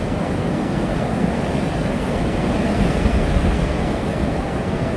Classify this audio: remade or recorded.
remade